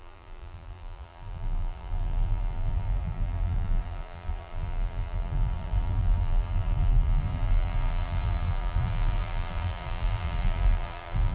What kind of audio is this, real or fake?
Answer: fake